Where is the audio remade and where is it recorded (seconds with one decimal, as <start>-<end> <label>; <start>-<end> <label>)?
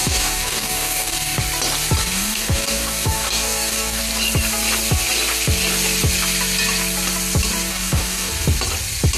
0.0-1.4 remade; 1.4-2.0 recorded; 2.0-4.0 remade; 4.0-7.7 recorded; 7.7-8.3 remade; 8.3-9.2 recorded